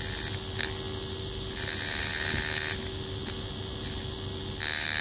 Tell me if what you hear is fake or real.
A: real